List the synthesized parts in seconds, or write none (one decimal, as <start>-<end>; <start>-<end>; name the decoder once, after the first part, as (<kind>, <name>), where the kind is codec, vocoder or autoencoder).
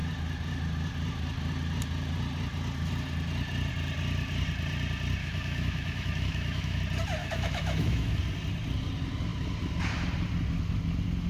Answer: 5.2-6.8 (autoencoder, DAC-VAE); 7.2-8.2